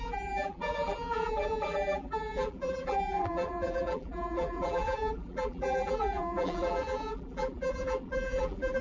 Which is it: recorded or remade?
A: remade